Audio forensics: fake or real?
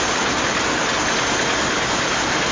real